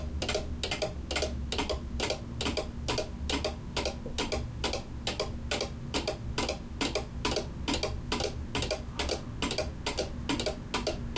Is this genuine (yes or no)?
yes